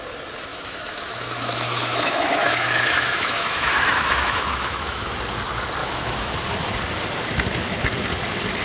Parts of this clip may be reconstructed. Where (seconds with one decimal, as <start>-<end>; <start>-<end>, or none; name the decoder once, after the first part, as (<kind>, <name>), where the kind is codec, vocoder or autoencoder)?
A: 0.5-5.2 (autoencoder, DAC-VAE); 5.8-6.3